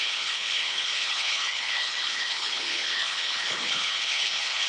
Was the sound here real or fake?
fake